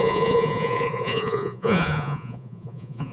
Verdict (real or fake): fake